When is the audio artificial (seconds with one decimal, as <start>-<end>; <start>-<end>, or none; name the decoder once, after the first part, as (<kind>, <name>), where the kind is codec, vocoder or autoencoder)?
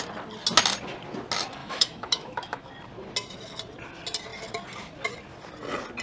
1.6-2.7 (autoencoder, DAC-VAE)